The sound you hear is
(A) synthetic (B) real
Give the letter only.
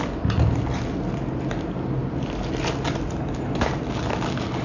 B